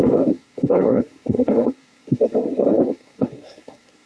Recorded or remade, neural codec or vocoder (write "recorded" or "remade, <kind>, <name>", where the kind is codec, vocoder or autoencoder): remade, codec, SNAC